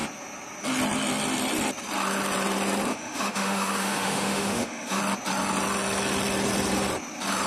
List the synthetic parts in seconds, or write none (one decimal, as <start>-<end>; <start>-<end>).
2.9-5.0